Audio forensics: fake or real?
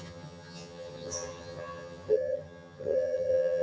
fake